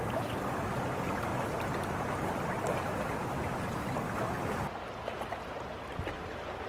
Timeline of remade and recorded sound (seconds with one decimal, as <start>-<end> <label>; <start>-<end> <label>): 0.0-6.7 recorded